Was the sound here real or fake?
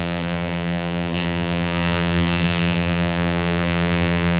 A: fake